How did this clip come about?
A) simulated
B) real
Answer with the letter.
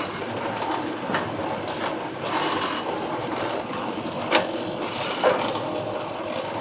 B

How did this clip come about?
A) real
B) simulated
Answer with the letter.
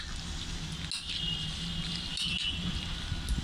A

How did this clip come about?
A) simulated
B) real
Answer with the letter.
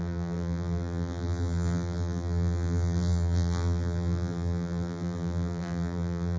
A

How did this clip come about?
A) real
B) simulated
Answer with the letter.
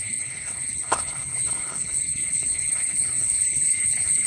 B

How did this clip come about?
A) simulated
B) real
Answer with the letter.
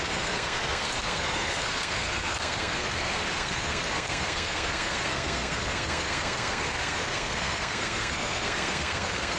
A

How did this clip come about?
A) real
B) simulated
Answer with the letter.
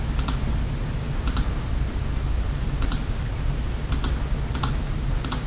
A